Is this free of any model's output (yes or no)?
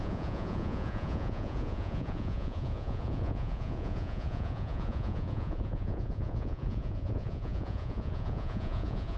no